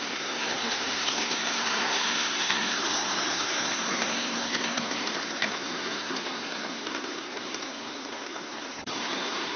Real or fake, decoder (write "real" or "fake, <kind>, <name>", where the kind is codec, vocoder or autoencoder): fake, codec, SNAC